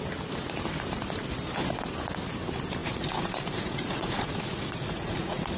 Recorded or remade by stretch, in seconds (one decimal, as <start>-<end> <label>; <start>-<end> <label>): 0.0-2.8 recorded; 2.8-5.6 remade